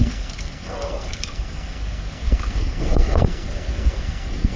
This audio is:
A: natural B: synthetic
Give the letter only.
B